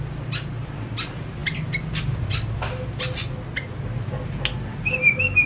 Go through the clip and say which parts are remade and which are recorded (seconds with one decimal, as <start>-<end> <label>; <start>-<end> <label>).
0.0-5.5 recorded